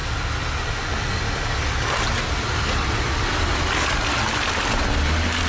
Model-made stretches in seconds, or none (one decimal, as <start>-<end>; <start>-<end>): none